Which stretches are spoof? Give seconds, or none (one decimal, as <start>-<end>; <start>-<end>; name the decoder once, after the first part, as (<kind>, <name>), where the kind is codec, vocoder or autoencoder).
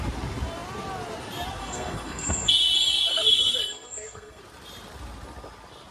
1.6-2.5 (codec, SNAC); 3.1-4.4